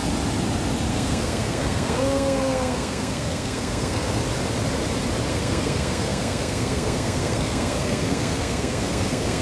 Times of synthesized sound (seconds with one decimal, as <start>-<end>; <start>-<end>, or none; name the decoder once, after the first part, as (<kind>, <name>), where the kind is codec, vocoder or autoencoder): 0.9-4.2 (codec, SNAC); 5.3-9.4